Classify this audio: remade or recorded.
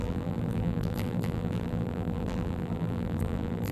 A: remade